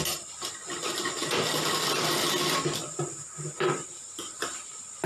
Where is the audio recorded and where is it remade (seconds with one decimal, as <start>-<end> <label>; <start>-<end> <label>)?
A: 0.0-5.1 recorded